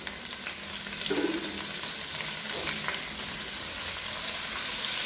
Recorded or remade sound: recorded